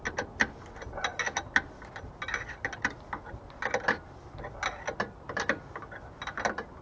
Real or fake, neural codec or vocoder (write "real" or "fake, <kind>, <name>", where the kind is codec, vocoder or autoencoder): real